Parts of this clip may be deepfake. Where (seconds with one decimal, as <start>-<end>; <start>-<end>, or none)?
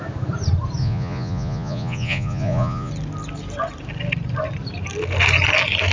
0.8-2.9